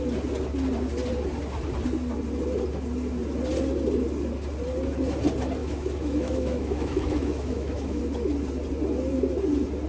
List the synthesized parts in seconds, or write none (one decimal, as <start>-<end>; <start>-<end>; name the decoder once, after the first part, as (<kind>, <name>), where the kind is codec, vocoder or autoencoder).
5.6-8.0 (autoencoder, DAC-VAE)